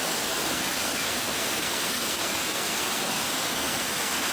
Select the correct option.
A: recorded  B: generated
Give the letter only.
B